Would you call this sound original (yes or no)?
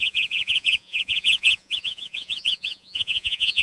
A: no